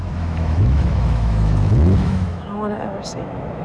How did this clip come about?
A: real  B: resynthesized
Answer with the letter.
B